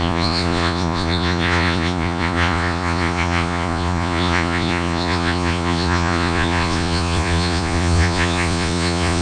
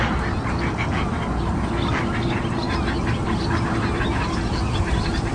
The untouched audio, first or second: second